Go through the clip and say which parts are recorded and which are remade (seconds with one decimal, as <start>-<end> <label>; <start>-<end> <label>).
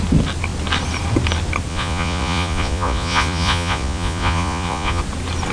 0.0-1.7 recorded; 1.7-5.0 remade; 5.0-5.5 recorded